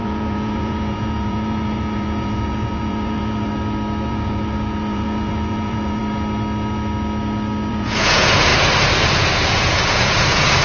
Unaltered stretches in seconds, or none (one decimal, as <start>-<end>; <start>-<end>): 3.5-4.1; 6.0-7.7; 8.5-9.1